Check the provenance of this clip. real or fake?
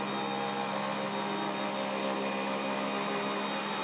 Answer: real